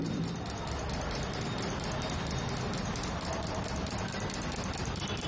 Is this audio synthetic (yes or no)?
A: yes